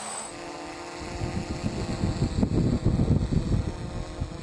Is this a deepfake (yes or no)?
no